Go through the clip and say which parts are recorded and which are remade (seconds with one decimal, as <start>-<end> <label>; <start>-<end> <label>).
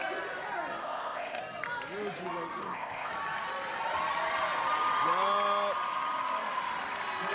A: 0.0-0.8 recorded; 0.8-1.4 remade; 1.4-2.6 recorded; 2.6-3.1 remade; 3.1-7.3 recorded